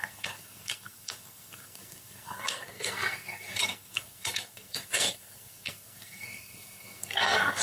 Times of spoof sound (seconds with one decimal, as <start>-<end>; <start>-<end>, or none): 0.0-7.6